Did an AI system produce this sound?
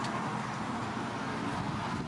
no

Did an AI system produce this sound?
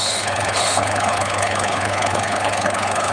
yes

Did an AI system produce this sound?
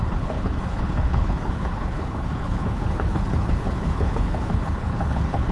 yes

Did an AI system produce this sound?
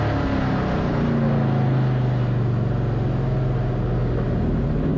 no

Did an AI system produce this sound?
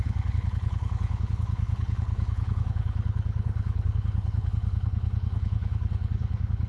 yes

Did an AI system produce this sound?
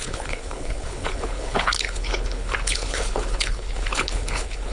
yes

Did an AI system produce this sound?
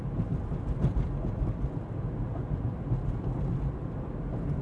no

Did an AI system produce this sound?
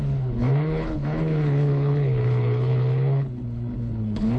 yes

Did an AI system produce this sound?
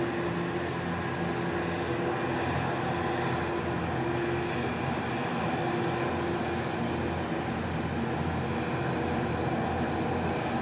no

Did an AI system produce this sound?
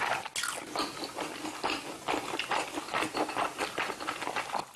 no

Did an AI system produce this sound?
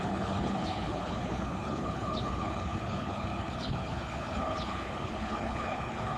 yes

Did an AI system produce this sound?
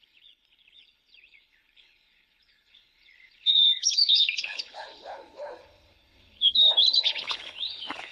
yes